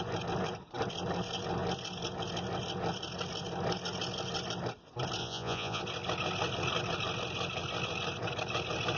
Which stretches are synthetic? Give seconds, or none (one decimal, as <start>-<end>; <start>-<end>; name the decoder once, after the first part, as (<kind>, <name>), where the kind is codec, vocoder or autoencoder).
5.2-5.8 (vocoder, Vocos)